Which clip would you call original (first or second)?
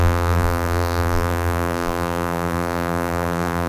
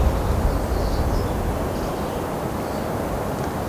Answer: second